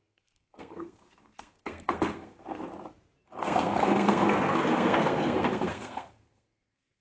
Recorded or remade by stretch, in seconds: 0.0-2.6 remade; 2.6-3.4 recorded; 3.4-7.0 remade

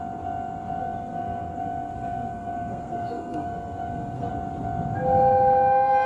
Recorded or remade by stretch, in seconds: 0.0-0.8 recorded; 0.8-4.3 remade; 4.3-6.1 recorded

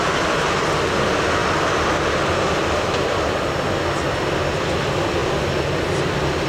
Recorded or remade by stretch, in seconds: 0.0-6.5 recorded